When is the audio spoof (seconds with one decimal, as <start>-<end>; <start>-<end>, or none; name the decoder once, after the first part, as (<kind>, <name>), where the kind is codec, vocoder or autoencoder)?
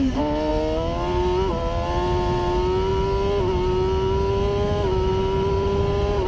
none